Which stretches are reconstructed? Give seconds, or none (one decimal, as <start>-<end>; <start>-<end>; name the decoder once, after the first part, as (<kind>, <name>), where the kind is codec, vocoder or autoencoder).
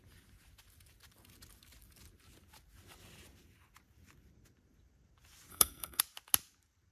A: 5.5-6.0 (codec, SNAC)